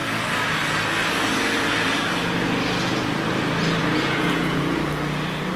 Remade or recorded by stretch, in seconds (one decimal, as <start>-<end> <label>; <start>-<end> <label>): 0.0-3.8 recorded; 3.8-4.6 remade; 4.6-5.6 recorded